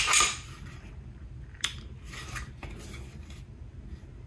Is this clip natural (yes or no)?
yes